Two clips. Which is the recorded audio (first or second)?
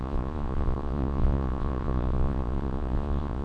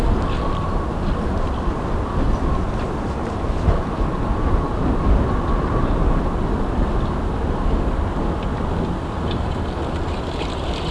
second